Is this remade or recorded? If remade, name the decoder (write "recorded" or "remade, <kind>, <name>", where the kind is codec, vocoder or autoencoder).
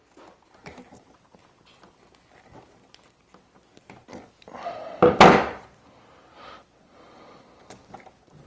recorded